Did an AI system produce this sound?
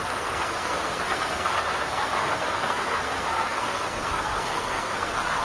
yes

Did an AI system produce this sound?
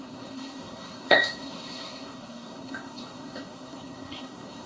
yes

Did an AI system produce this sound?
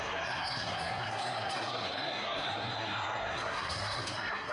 yes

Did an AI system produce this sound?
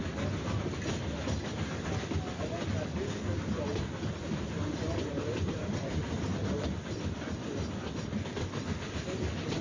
no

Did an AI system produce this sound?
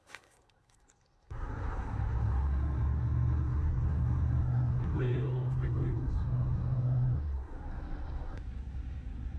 yes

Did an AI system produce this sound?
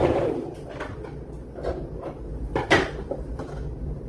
no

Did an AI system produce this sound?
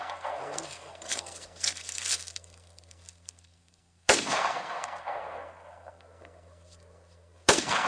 yes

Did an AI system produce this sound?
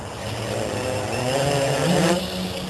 no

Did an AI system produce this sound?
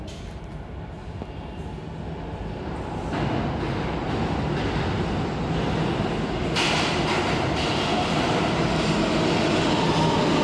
no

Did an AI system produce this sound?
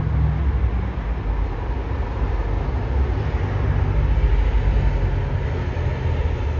no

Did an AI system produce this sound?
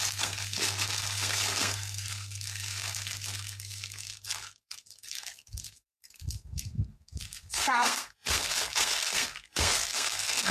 yes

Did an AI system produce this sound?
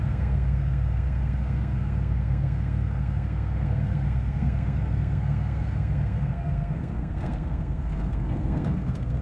yes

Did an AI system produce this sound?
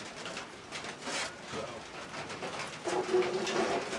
no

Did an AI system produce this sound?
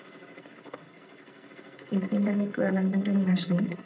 yes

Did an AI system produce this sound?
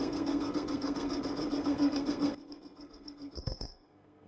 yes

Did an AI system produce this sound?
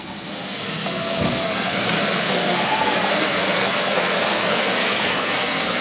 yes